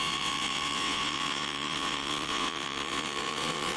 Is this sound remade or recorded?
remade